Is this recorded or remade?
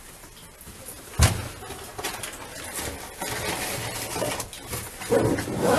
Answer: recorded